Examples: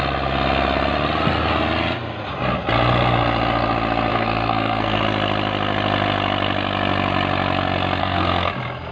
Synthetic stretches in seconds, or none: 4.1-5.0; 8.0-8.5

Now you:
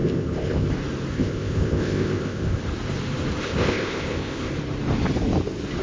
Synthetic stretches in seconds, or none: 0.0-0.7; 1.1-2.6; 3.4-4.5

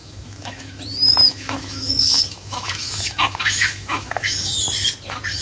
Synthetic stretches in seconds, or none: 0.0-0.8; 1.3-4.5